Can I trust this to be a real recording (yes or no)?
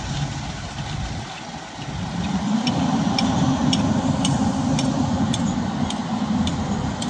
yes